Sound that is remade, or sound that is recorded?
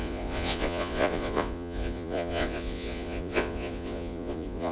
remade